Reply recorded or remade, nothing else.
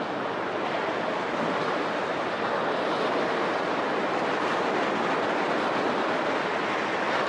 recorded